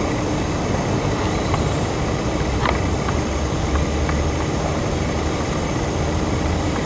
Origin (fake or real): real